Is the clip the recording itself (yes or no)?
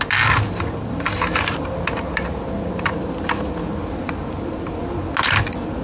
yes